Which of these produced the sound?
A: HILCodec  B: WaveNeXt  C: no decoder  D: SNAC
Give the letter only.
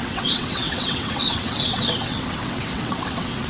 B